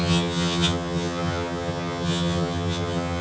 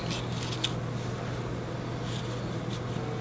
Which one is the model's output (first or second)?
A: first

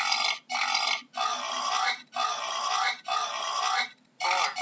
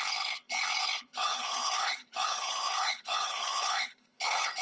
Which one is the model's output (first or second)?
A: second